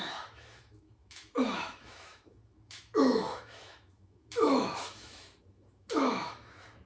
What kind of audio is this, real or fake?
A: fake